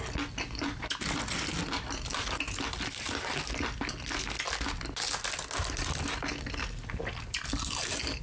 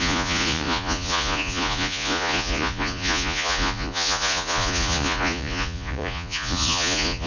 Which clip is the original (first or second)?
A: first